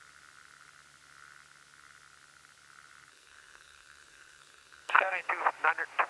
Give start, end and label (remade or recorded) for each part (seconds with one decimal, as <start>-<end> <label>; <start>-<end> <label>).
0.0-3.1 recorded; 3.1-5.3 remade; 5.3-6.1 recorded